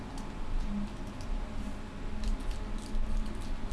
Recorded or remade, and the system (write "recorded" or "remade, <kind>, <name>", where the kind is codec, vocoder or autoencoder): recorded